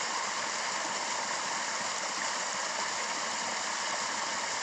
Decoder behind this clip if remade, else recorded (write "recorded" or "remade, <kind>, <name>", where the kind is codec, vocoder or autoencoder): recorded